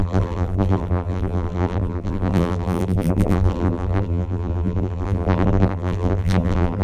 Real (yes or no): no